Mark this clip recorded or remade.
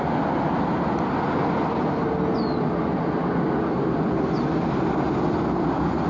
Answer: recorded